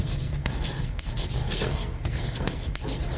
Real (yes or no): no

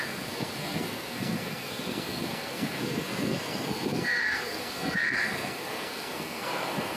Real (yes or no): no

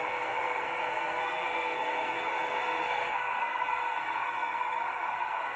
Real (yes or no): no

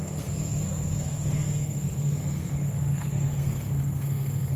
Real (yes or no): no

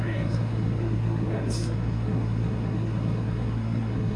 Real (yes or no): no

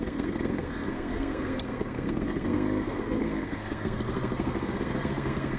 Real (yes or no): no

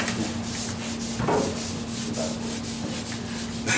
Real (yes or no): yes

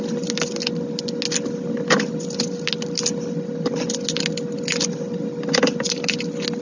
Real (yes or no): yes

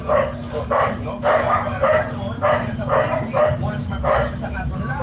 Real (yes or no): yes